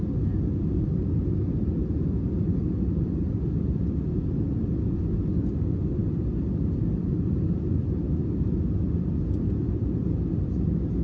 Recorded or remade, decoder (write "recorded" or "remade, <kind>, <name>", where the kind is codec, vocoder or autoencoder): recorded